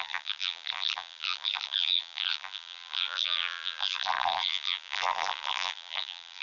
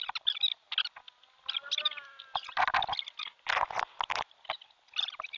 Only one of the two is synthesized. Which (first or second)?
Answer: first